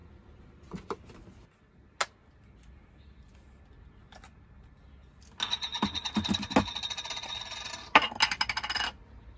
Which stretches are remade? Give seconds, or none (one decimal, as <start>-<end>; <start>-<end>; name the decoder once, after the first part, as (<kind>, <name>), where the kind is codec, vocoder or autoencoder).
none